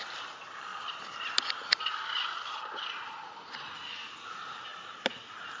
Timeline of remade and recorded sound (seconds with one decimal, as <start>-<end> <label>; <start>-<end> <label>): 0.0-0.7 remade; 0.7-4.1 recorded; 4.1-5.6 remade